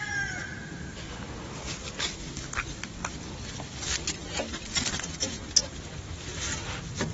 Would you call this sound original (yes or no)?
yes